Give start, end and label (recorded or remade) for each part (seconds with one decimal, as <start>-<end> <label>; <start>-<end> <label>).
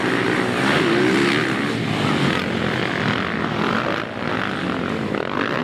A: 0.0-5.6 recorded